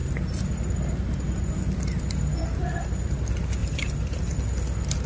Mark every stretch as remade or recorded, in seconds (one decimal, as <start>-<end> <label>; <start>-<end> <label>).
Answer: 0.0-3.6 recorded; 3.6-4.2 remade; 4.2-5.1 recorded